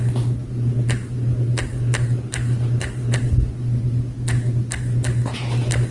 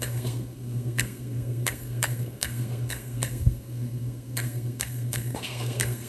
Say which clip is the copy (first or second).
second